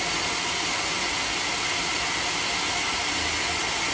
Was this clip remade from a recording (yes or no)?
no